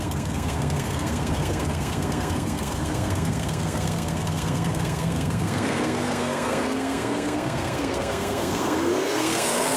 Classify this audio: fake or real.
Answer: fake